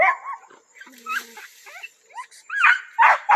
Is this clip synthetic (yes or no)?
no